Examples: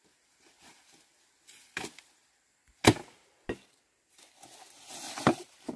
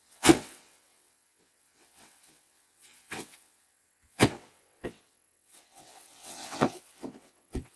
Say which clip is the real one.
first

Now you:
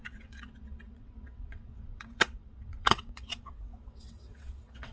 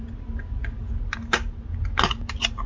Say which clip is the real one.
second